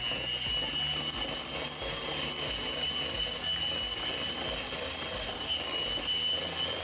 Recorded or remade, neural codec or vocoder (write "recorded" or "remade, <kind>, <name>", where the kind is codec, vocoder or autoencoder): recorded